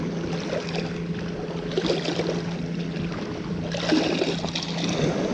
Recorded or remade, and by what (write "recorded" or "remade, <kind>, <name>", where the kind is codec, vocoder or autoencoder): recorded